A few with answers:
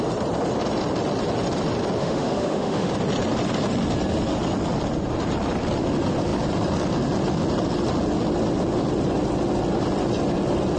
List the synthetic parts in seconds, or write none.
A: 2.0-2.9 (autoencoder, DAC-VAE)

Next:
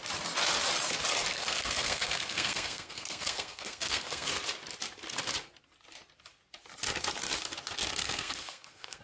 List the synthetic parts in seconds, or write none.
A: 1.3-4.3 (codec, SNAC); 8.0-9.0